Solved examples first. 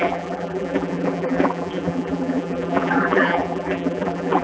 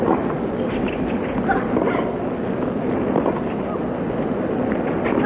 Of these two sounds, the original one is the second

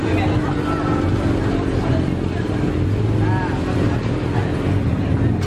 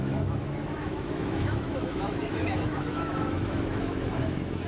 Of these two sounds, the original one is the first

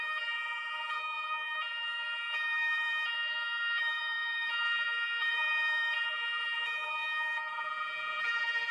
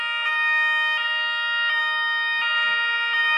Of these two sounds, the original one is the second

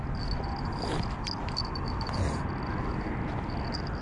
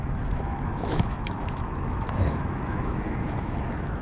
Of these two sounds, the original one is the first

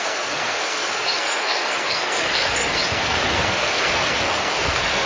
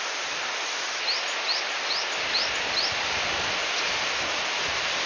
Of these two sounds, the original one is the second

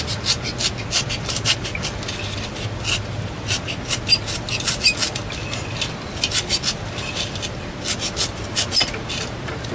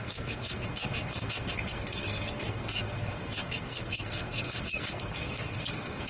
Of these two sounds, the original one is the first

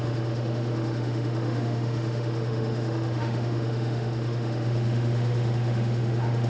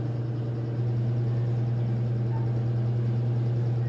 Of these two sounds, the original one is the second